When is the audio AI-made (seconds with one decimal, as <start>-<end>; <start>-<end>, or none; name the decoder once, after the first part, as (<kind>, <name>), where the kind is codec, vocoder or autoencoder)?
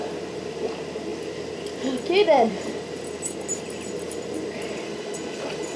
none